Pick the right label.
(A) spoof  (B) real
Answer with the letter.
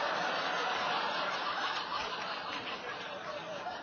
A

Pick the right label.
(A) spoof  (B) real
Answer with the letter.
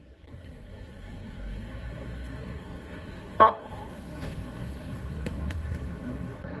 A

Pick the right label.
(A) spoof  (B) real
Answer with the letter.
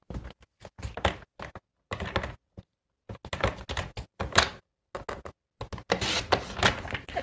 B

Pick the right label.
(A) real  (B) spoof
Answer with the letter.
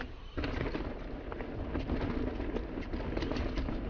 A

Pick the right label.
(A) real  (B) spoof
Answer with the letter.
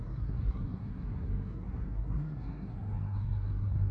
B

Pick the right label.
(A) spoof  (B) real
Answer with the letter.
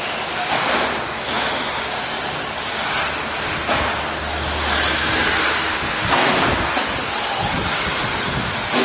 B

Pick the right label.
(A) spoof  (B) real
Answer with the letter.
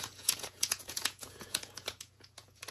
A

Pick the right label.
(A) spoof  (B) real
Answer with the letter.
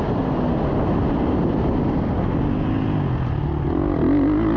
B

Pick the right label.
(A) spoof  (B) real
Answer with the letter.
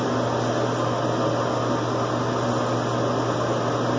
B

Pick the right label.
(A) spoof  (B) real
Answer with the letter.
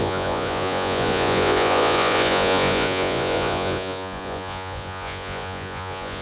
A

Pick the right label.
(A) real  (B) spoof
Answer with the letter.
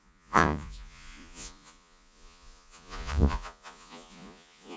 B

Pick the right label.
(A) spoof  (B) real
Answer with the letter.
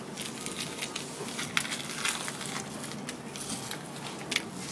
B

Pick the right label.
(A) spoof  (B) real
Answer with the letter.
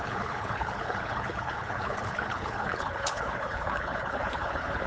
A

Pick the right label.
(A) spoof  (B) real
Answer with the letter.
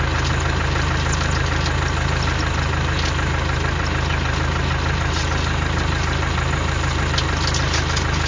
B